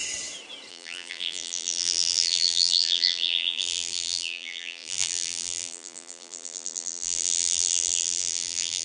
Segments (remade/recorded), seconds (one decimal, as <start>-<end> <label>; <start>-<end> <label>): 0.0-0.7 recorded; 0.7-8.8 remade